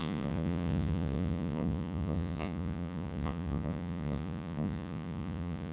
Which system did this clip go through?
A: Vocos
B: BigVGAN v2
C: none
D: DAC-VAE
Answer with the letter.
A